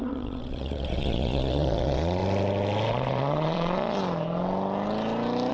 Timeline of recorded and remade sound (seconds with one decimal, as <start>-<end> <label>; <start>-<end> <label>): 0.0-2.2 remade; 2.2-2.9 recorded; 2.9-4.0 remade; 4.0-5.5 recorded